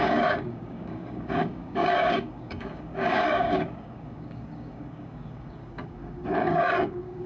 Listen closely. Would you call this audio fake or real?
fake